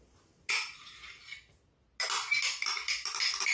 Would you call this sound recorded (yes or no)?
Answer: yes